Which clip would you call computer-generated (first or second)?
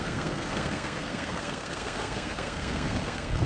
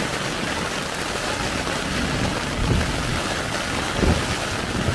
first